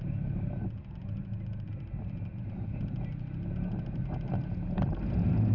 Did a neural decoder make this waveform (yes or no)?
no